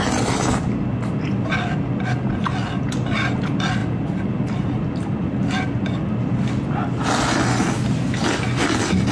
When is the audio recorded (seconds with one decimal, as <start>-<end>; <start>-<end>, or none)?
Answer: 0.0-9.1

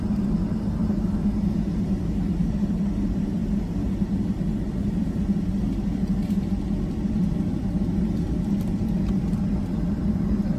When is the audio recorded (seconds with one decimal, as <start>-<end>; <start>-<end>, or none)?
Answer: 0.0-0.8; 1.6-10.6

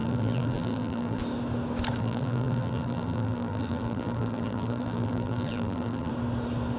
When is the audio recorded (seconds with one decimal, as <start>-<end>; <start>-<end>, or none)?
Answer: 1.2-2.0; 6.1-6.8